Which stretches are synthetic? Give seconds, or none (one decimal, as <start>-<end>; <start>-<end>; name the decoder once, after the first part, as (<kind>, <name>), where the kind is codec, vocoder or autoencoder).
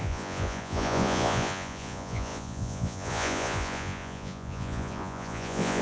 0.0-5.8 (vocoder, Vocos)